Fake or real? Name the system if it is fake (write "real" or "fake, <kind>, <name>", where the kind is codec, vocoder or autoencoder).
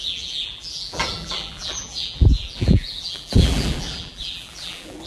fake, vocoder, BigVGAN v2